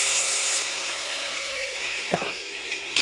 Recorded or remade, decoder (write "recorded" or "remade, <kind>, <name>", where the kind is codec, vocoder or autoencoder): remade, codec, SNAC